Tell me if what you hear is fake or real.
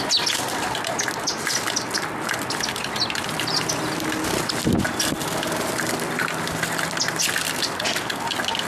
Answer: real